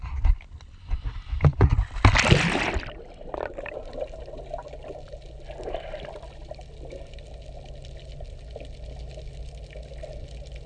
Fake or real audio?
real